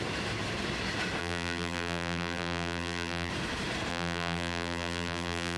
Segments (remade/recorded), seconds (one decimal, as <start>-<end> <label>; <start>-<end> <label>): 0.0-1.2 recorded; 1.2-3.3 remade; 3.3-3.9 recorded; 3.9-5.6 remade